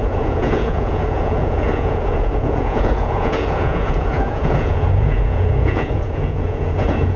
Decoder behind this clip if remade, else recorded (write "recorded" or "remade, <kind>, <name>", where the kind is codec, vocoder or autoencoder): remade, vocoder, Vocos